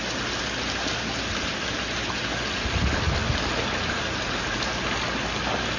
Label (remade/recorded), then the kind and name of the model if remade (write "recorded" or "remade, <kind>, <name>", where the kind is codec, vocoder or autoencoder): recorded